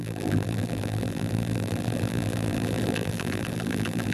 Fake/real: fake